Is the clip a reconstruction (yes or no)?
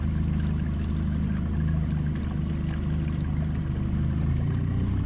no